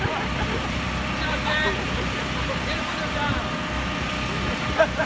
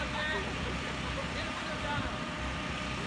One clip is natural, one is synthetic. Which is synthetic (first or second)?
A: second